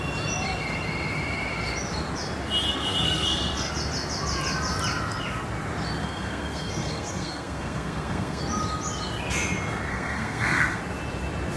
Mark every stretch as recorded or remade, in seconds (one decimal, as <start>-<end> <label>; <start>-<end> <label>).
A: 0.0-2.7 recorded; 2.7-3.7 remade; 3.7-6.0 recorded; 6.0-8.4 remade; 8.4-9.9 recorded; 9.9-10.8 remade; 10.8-11.6 recorded